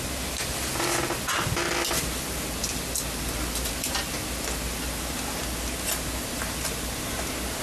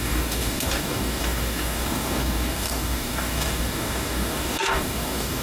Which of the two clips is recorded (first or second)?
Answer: first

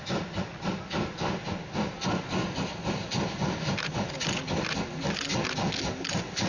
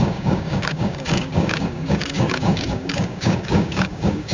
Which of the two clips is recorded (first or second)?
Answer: first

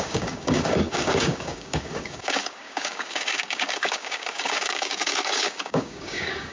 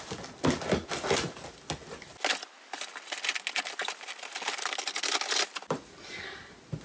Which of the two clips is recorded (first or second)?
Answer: second